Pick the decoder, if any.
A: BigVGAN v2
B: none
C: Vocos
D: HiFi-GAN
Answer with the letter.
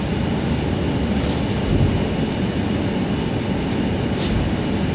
B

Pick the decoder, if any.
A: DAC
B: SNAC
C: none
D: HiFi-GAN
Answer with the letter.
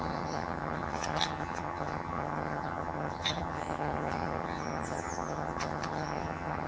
D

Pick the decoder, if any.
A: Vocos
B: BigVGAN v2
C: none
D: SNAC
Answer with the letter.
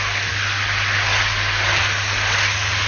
C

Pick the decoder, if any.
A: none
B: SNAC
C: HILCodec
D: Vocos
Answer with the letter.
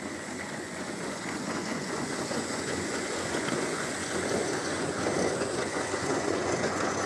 D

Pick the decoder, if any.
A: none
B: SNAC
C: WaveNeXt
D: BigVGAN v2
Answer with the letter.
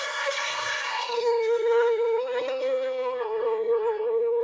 B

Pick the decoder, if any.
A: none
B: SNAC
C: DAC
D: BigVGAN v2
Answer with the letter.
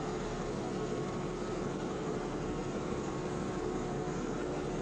B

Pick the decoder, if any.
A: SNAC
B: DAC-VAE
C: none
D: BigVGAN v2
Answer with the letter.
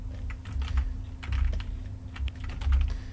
C